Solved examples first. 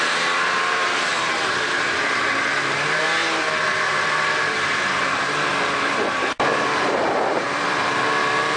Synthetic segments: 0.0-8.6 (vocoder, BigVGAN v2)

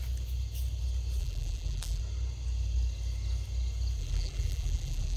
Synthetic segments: 1.2-2.0 (vocoder, BigVGAN v2); 4.0-5.2

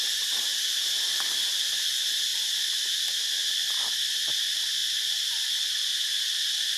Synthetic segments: 2.3-3.2 (vocoder, BigVGAN v2)

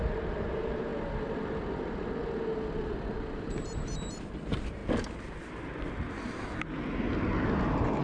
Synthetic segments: 0.0-0.9 (vocoder, BigVGAN v2); 3.4-4.8

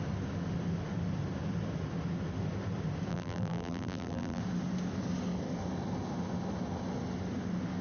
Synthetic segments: 3.1-4.4 (vocoder, BigVGAN v2)